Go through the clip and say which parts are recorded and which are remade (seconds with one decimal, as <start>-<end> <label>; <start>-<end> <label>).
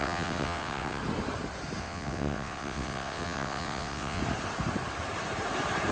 0.0-1.0 remade; 1.0-1.8 recorded; 1.8-4.2 remade; 4.2-5.9 recorded